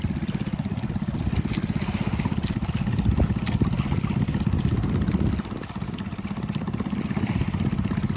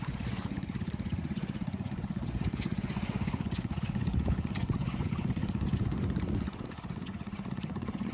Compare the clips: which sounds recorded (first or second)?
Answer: first